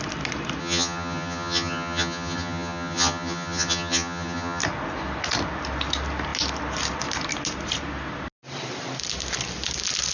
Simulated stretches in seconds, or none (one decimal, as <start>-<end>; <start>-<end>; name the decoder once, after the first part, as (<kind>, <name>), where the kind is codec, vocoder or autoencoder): 0.6-4.6 (vocoder, HiFi-GAN)